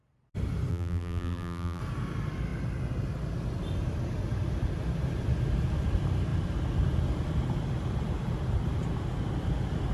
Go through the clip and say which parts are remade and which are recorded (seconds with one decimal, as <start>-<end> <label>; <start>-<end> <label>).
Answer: 0.0-0.7 recorded; 0.7-1.8 remade; 1.8-9.9 recorded